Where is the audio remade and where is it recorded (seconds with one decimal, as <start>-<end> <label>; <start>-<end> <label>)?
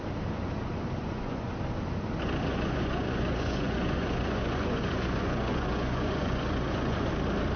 0.0-1.0 recorded; 1.0-1.5 remade; 1.5-2.5 recorded; 2.5-7.1 remade; 7.1-7.6 recorded